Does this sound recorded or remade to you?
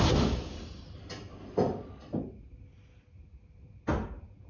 recorded